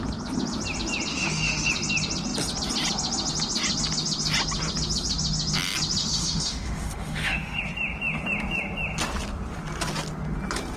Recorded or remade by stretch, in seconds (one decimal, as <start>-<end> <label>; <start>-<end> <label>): 0.0-1.1 recorded; 1.1-1.7 remade; 1.7-6.0 recorded; 6.0-7.6 remade; 7.6-10.8 recorded